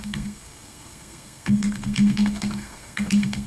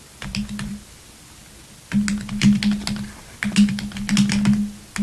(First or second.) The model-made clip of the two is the first